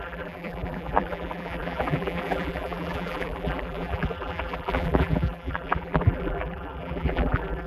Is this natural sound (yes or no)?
no